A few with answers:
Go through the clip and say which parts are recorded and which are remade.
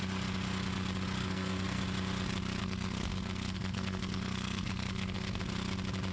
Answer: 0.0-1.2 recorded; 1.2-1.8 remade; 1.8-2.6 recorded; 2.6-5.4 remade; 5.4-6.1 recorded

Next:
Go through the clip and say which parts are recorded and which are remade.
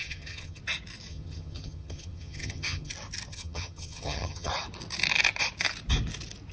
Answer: 0.0-0.6 remade; 0.6-1.1 recorded; 1.1-2.9 remade; 2.9-3.3 recorded; 3.3-4.5 remade; 4.5-6.5 recorded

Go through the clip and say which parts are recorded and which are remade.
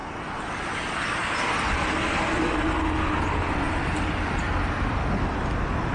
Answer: 0.0-5.9 recorded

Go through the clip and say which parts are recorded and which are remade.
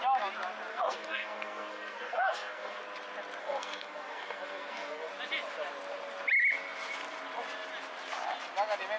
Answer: 0.0-0.7 recorded; 0.7-2.8 remade; 2.8-3.4 recorded; 3.4-5.1 remade; 5.1-9.0 recorded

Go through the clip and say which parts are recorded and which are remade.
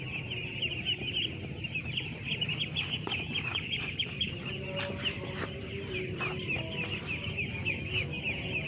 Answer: 0.0-3.5 recorded; 3.5-4.3 remade; 4.3-8.7 recorded